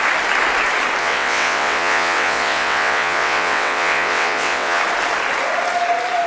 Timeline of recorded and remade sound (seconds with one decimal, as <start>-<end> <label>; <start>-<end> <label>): 0.0-1.0 recorded; 1.0-4.8 remade; 4.8-6.3 recorded